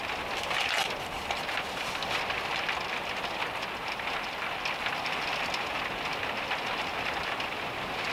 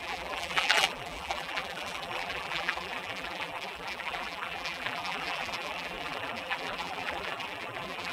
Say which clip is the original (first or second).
first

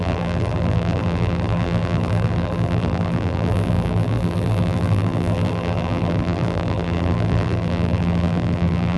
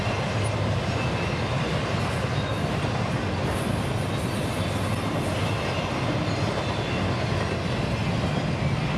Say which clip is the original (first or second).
second